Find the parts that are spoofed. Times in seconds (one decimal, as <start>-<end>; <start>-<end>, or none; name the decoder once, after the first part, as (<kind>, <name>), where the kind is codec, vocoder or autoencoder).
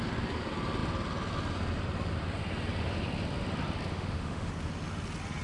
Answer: 3.9-4.5 (autoencoder, DAC-VAE)